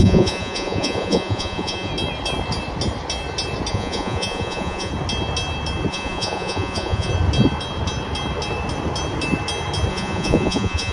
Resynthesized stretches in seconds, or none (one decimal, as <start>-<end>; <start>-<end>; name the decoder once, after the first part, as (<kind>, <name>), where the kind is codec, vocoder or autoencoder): 0.0-1.9 (vocoder, Vocos); 3.7-4.9; 5.9-7.1; 9.9-10.9

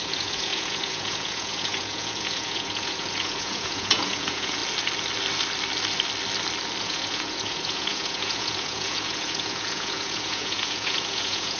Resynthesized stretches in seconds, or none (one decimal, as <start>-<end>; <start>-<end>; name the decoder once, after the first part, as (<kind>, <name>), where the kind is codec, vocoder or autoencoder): 0.0-4.6 (vocoder, Vocos); 6.8-11.6